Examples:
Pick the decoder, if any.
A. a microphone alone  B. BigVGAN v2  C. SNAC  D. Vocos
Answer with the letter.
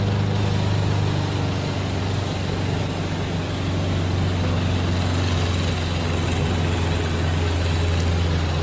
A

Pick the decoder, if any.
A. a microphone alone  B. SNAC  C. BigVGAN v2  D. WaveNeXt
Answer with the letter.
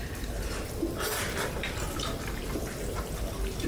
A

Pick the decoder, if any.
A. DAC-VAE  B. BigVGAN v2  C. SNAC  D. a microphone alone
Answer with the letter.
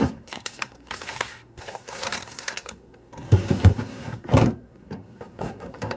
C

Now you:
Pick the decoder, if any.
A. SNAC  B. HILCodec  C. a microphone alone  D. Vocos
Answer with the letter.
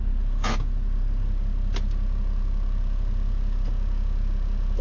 C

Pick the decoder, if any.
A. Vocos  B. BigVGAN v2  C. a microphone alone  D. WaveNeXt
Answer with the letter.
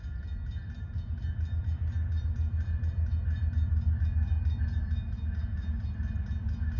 C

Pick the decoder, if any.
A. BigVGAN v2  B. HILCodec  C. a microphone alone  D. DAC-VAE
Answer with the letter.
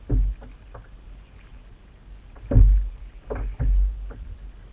C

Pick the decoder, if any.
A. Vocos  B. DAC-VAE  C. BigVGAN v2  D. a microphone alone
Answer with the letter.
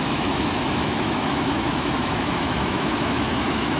B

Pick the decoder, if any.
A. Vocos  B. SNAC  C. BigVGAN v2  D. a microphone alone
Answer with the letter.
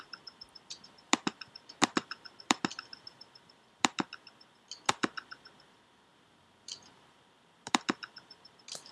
C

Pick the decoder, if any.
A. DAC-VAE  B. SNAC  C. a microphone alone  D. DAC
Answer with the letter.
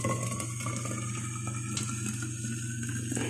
C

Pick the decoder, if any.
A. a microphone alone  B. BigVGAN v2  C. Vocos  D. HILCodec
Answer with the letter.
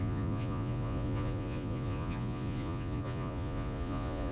C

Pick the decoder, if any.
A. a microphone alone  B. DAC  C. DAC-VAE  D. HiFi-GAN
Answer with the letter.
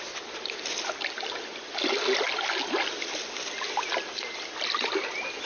A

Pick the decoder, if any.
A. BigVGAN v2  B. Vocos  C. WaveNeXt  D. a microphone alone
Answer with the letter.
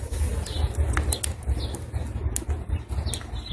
D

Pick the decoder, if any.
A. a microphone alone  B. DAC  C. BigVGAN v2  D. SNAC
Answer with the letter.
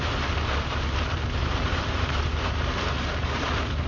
C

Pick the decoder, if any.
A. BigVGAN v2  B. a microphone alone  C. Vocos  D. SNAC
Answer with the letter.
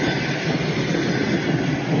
B